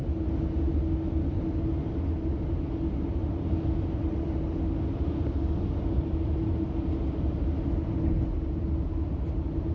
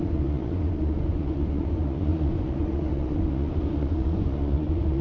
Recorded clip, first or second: first